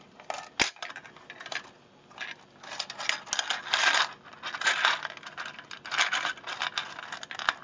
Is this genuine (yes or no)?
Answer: yes